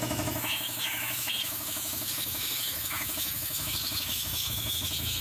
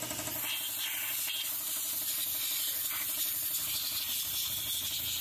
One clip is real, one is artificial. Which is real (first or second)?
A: second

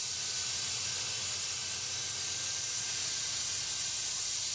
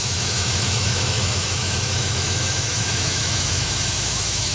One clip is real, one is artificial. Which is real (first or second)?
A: first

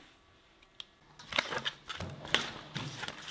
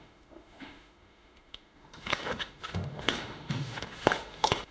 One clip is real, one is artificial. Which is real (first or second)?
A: first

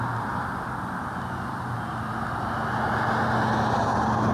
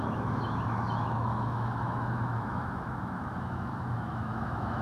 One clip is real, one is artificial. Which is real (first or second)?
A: first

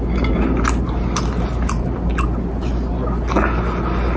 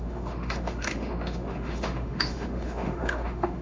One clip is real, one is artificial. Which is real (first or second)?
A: first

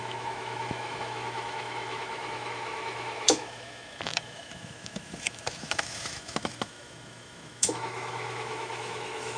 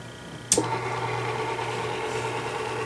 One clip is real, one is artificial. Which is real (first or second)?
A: second